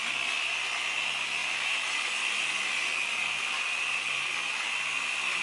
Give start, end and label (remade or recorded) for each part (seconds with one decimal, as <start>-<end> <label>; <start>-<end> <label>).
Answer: 0.0-5.4 recorded